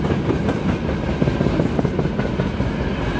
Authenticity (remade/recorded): recorded